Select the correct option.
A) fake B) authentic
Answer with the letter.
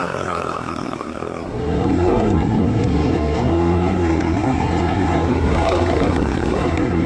A